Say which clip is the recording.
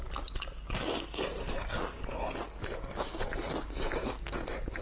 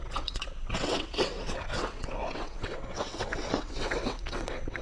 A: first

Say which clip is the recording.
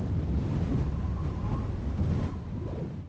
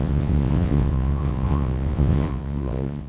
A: first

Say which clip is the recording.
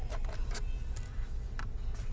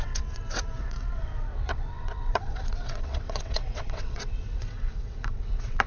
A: first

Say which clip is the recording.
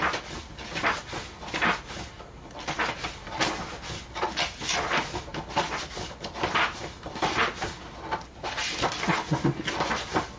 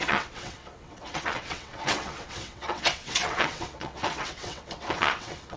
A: first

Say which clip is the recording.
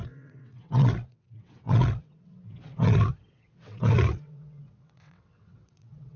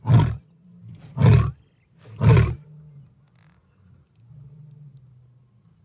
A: second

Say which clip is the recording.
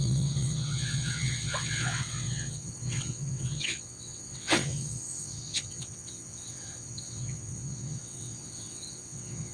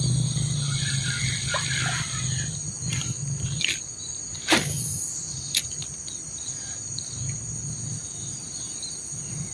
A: second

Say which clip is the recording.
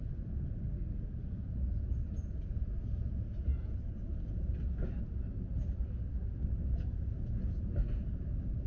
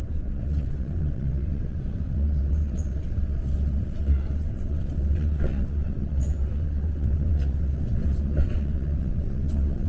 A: first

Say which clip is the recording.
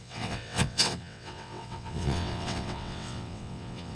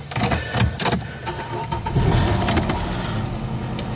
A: second